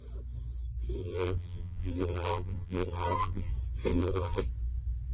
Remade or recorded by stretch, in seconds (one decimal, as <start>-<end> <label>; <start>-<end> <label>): 0.0-1.0 recorded; 1.0-3.5 remade; 3.5-3.9 recorded; 3.9-4.4 remade; 4.4-5.1 recorded